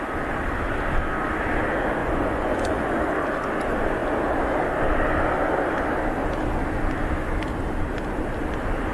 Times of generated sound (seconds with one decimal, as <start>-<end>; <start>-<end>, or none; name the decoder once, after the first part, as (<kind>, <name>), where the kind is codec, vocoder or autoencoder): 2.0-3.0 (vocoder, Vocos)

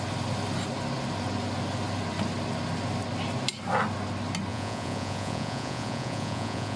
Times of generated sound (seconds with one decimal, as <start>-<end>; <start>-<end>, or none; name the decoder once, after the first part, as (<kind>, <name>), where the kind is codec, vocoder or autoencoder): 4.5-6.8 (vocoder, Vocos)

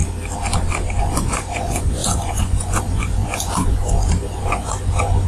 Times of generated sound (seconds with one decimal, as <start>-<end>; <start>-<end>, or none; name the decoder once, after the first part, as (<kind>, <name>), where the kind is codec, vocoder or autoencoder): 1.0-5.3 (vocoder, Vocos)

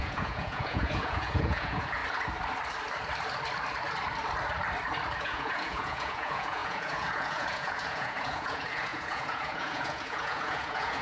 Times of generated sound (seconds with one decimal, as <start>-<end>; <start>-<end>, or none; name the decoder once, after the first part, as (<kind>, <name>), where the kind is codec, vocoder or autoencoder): 0.0-2.0 (vocoder, Vocos); 5.2-11.0

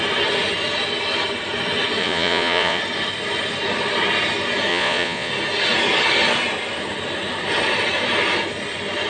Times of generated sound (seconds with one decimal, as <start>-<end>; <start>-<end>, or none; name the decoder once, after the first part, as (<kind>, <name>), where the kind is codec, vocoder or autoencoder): 2.0-2.8 (vocoder, Vocos); 4.7-5.3